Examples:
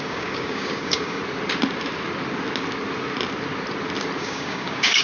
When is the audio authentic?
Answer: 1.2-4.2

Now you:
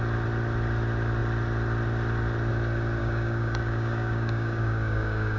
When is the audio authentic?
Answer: 0.0-3.0